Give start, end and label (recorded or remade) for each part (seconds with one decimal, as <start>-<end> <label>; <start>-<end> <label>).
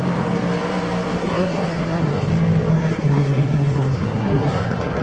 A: 0.0-1.2 recorded; 1.2-2.3 remade; 2.3-2.7 recorded; 2.7-5.0 remade